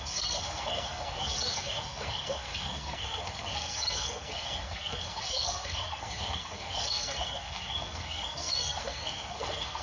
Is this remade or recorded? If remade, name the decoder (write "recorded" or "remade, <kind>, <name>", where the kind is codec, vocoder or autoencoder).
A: remade, codec, SNAC